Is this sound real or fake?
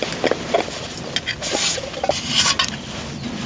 real